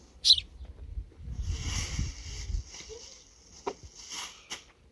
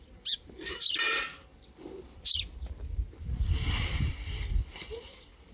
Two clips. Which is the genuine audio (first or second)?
first